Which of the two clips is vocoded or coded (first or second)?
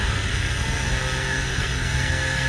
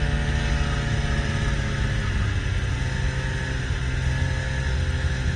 first